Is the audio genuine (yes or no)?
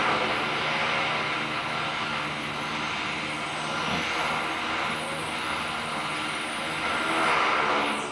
yes